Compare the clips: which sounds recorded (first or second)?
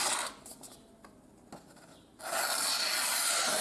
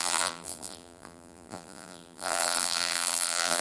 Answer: first